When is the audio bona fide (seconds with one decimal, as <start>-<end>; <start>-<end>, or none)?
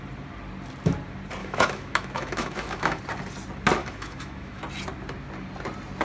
0.0-1.4; 3.0-3.8; 4.6-6.0